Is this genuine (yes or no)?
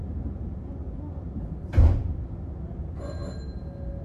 yes